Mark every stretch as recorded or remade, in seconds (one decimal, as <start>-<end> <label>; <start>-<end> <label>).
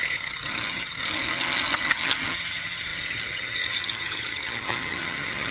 0.0-5.5 remade